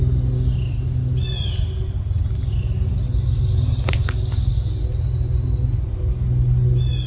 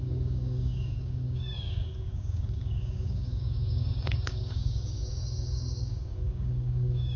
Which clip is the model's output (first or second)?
second